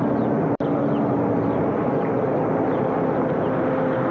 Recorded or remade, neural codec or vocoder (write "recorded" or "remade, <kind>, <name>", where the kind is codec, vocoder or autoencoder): recorded